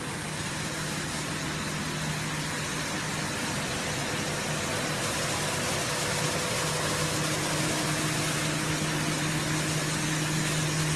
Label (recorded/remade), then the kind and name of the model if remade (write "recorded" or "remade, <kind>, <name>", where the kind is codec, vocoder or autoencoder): recorded